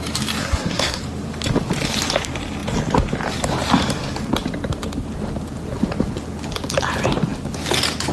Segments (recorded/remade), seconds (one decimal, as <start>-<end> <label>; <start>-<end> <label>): 0.0-0.4 recorded; 0.4-1.0 remade; 1.0-8.1 recorded